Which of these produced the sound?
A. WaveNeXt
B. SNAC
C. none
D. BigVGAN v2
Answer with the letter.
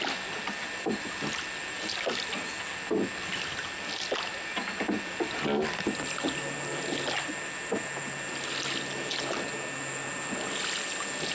C